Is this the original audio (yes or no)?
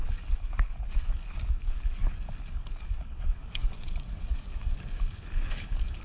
no